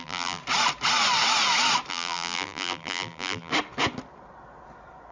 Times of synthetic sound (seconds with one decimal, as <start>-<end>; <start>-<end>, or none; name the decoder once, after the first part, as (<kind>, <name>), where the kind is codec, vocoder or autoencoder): 0.0-0.4 (vocoder, BigVGAN v2); 1.9-3.5